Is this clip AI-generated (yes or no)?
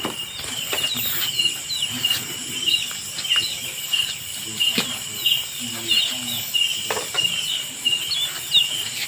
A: no